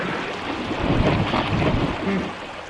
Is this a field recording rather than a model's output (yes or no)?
yes